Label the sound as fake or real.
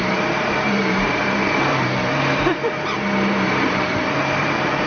fake